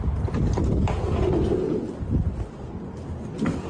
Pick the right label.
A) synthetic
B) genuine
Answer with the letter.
B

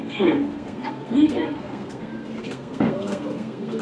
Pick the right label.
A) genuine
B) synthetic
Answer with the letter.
B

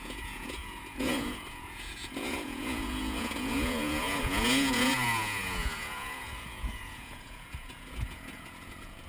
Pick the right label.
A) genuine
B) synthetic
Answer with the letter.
B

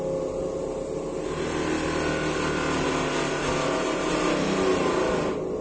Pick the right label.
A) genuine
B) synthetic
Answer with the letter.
A